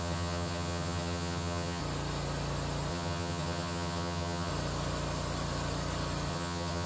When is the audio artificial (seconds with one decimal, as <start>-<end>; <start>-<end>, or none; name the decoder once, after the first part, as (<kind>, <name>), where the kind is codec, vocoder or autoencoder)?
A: 0.0-1.8 (vocoder, HiFi-GAN); 2.9-4.5; 6.3-6.9